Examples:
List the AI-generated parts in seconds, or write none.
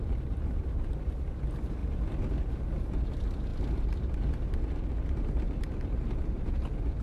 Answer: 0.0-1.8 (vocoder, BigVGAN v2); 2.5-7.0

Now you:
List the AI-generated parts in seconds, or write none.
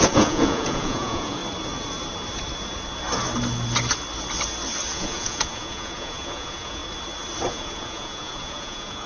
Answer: 0.0-1.4 (vocoder, Vocos); 4.9-6.8; 7.5-9.1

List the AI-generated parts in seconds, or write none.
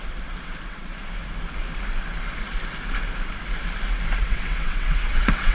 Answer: 0.0-0.9 (vocoder, WaveNeXt); 4.2-5.5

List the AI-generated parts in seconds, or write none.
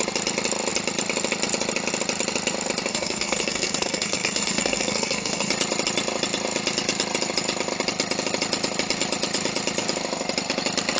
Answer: 2.9-5.5 (codec, SNAC)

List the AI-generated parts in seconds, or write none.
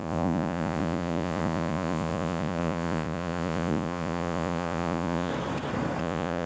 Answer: 0.0-5.3 (vocoder, Vocos); 6.0-6.5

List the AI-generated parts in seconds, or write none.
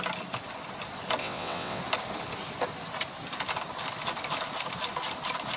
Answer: 1.2-1.8 (vocoder, WaveNeXt)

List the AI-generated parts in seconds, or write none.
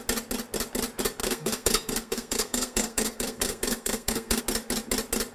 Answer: 1.2-4.4 (codec, SNAC)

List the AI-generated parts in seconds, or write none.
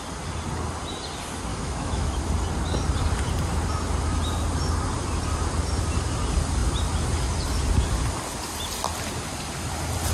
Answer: 1.5-2.2 (autoencoder, DAC-VAE)